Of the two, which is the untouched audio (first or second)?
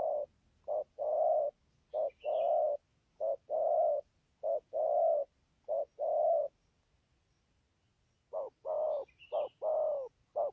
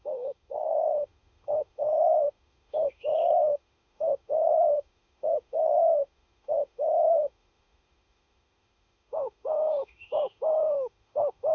first